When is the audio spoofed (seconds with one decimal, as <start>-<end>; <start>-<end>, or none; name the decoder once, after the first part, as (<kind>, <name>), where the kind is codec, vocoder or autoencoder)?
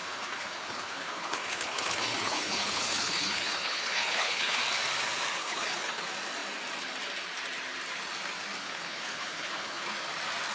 0.0-4.6 (codec, HILCodec); 5.4-6.0; 8.6-9.9